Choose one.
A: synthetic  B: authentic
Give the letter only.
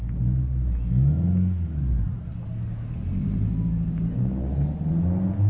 B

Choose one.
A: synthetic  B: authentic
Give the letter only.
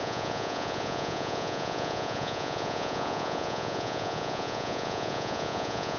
A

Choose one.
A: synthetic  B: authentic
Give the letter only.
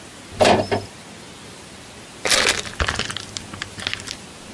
B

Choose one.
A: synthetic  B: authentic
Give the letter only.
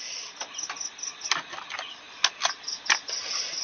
B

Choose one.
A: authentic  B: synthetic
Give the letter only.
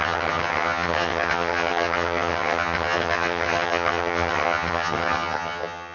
B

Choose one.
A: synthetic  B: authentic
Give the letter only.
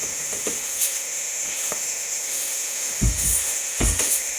A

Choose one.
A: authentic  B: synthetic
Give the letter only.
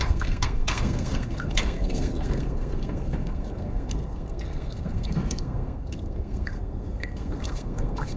B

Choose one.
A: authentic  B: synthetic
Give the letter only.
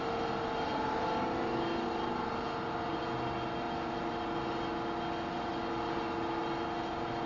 A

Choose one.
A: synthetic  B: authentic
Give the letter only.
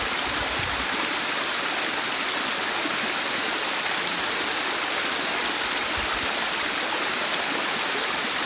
B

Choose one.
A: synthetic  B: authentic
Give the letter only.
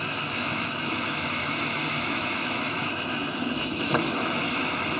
A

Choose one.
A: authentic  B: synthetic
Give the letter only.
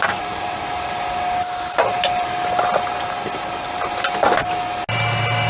A